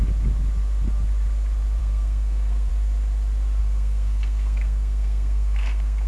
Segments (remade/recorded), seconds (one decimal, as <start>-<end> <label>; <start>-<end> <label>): 0.0-1.8 recorded; 1.8-2.7 remade; 2.7-3.6 recorded; 3.6-6.1 remade